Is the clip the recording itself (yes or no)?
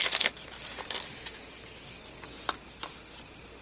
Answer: yes